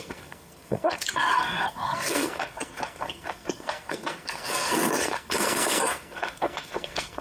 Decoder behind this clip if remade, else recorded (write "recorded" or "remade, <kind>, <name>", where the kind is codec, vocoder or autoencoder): remade, codec, SNAC